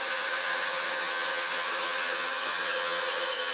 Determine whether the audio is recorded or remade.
remade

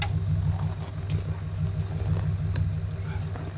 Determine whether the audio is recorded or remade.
recorded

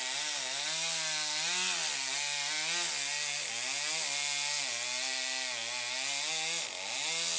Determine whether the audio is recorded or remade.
recorded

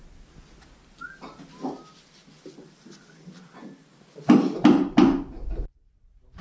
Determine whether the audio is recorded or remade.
recorded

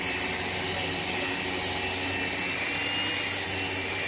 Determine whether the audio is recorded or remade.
recorded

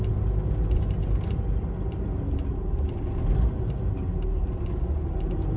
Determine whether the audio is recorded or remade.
recorded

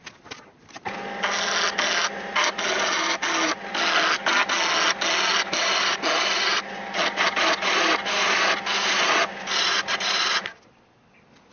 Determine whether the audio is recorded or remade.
recorded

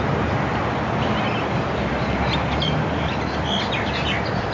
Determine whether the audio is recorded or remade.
recorded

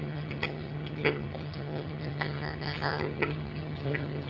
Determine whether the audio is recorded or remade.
remade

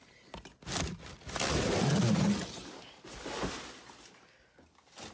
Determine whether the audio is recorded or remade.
recorded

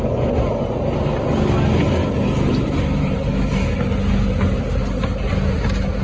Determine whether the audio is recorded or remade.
recorded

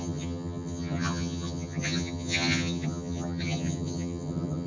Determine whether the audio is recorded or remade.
remade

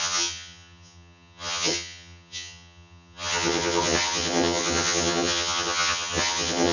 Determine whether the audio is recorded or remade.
remade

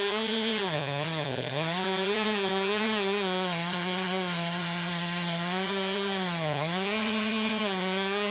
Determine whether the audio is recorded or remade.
remade